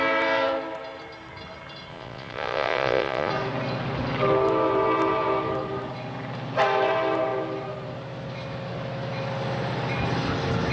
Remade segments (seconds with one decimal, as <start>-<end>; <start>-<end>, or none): 1.9-3.3